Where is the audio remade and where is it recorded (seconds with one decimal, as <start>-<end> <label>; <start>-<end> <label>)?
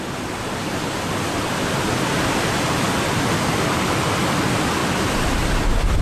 0.0-6.0 recorded